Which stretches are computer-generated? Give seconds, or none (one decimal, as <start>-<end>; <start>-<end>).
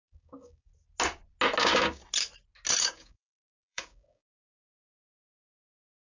0.0-0.7; 1.6-2.0; 2.8-6.1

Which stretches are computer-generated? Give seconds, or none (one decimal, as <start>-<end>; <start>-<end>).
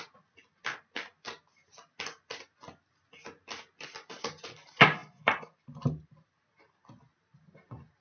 5.0-6.8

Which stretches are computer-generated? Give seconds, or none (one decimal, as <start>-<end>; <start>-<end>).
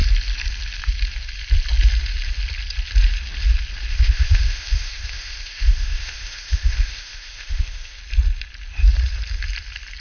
3.9-8.0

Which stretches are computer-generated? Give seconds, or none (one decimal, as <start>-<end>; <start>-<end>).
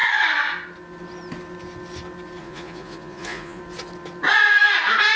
2.4-3.6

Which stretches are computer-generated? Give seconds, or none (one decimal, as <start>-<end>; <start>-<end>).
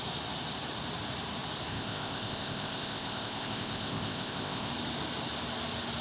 1.7-4.7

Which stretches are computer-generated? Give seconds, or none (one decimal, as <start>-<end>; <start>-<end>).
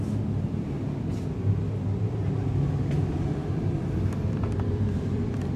0.0-1.1; 2.1-5.6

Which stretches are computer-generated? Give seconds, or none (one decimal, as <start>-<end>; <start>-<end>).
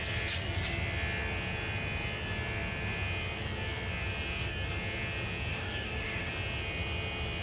5.5-6.3